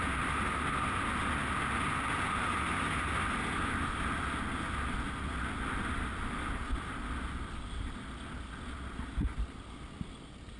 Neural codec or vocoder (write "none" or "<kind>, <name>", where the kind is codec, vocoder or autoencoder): none